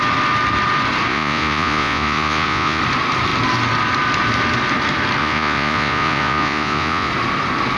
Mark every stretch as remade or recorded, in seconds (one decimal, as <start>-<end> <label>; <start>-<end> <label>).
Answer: 0.0-1.1 recorded; 1.1-2.8 remade; 2.8-5.2 recorded; 5.2-7.1 remade; 7.1-7.8 recorded